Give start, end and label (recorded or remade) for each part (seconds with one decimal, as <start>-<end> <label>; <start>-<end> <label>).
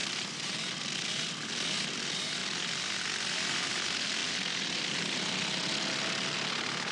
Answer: 0.0-0.8 remade; 0.8-2.4 recorded; 2.4-3.0 remade; 3.0-4.2 recorded; 4.2-5.2 remade; 5.2-6.9 recorded